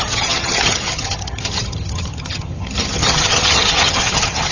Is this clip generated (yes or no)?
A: yes